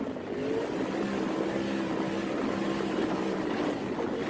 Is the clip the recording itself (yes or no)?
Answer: yes